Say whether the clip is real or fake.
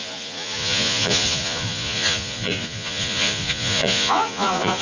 fake